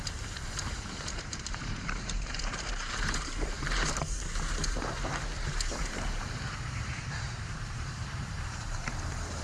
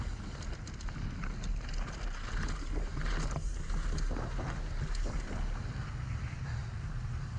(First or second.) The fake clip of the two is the first